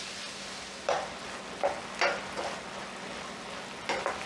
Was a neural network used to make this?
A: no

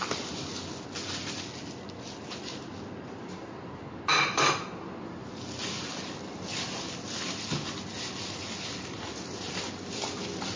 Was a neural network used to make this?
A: no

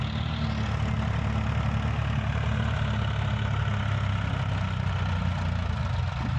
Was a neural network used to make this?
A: no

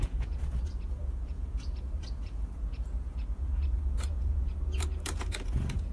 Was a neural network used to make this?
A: yes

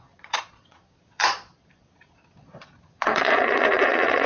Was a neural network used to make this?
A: yes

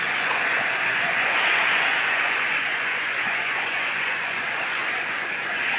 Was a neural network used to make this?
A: yes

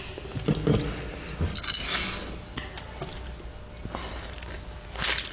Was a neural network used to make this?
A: no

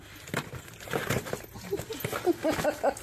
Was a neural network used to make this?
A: no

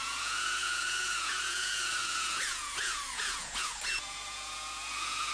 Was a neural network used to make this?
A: yes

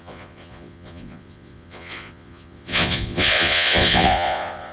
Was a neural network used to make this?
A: yes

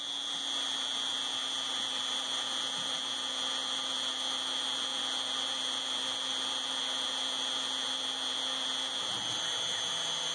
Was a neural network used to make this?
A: no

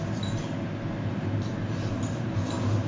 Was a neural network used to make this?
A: no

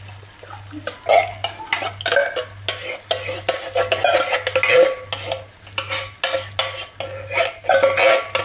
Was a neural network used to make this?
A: no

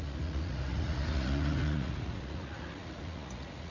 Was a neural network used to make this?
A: yes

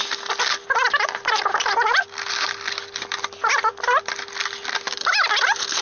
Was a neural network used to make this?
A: no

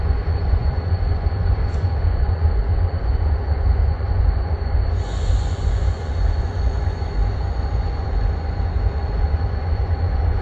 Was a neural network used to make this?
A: yes